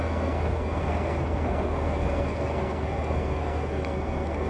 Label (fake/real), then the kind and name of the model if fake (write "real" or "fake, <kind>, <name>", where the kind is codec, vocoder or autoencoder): fake, codec, SNAC